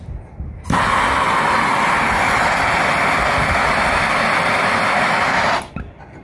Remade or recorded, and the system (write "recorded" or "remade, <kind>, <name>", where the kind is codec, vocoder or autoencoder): recorded